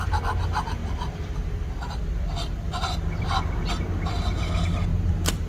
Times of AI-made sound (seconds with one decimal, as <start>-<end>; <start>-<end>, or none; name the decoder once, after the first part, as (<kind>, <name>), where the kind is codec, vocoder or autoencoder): none